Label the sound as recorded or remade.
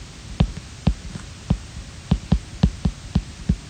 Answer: recorded